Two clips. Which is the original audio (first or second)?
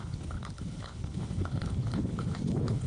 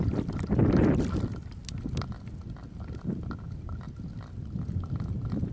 second